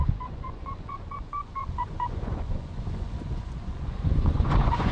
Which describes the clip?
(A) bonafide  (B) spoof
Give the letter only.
B